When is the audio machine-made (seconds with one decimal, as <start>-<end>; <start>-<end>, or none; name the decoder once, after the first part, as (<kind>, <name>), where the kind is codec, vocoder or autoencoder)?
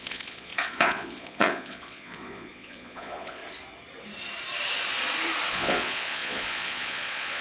0.0-3.4 (vocoder, Vocos); 5.5-7.4